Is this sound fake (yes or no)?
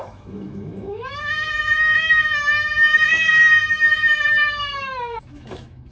yes